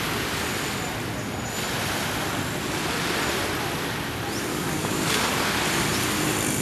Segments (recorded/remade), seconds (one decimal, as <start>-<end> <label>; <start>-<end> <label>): 0.0-4.5 recorded; 4.5-5.4 remade; 5.4-6.6 recorded